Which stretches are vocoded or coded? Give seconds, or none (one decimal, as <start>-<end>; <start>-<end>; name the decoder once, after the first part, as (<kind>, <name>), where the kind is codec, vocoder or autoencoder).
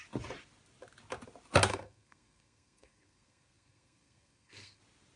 1.7-4.8 (codec, SNAC)